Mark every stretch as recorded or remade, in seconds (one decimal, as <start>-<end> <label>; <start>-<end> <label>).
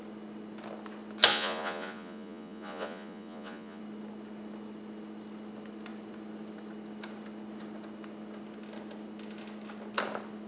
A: 0.0-1.3 recorded; 1.3-3.8 remade; 3.8-10.5 recorded